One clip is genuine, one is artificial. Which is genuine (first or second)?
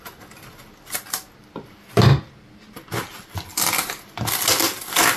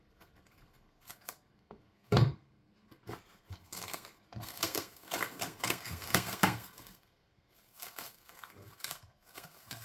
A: first